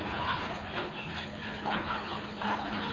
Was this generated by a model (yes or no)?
yes